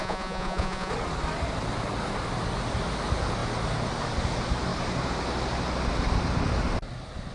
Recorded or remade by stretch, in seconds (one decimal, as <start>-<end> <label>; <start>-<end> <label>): 0.0-0.9 remade; 0.9-7.3 recorded